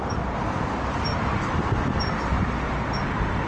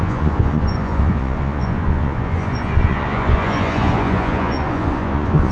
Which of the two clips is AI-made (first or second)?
second